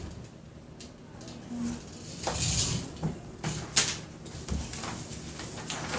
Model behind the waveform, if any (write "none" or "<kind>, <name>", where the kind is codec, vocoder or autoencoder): none